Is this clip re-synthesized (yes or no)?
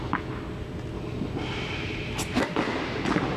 no